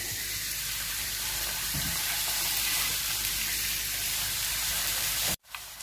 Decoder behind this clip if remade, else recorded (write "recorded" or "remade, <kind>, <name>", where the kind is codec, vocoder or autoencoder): remade, vocoder, BigVGAN v2